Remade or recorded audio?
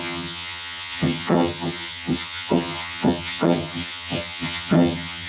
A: remade